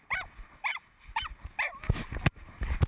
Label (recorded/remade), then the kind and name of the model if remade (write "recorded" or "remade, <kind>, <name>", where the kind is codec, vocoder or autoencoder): recorded